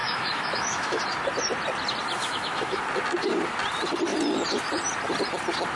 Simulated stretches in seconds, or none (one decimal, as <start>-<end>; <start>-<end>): 0.0-1.0; 2.2-2.8